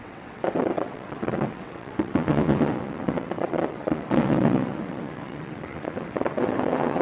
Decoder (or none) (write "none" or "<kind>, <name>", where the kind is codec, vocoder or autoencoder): vocoder, WaveNeXt